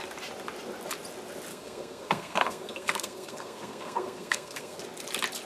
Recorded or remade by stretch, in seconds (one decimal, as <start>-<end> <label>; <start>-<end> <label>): 0.0-1.5 recorded; 1.5-4.8 remade; 4.8-5.5 recorded